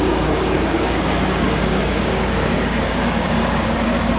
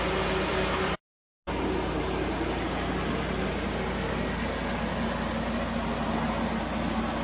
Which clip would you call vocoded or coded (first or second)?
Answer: first